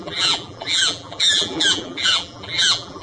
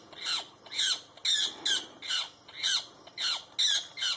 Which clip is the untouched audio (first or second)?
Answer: second